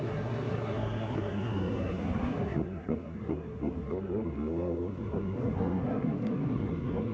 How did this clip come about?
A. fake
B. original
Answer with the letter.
A